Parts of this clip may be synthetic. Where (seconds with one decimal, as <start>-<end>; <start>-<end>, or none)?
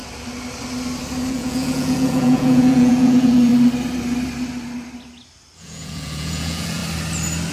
1.3-3.5; 5.6-6.8